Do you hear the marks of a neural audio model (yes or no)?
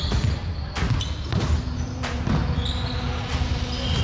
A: no